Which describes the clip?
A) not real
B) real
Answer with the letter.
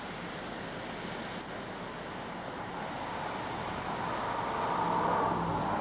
B